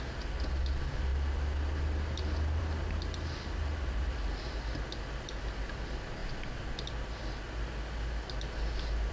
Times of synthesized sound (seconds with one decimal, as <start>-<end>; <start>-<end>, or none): none